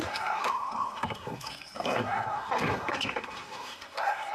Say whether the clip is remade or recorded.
remade